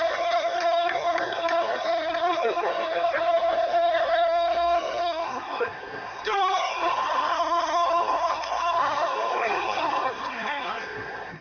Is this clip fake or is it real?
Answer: fake